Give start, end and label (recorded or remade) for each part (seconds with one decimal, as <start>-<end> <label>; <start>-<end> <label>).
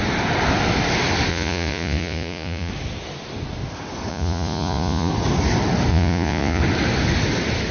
0.0-1.3 recorded; 1.3-2.7 remade; 2.7-4.1 recorded; 4.1-5.1 remade; 5.1-5.9 recorded; 5.9-6.6 remade; 6.6-7.7 recorded